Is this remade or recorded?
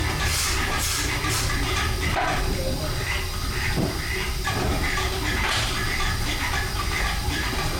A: remade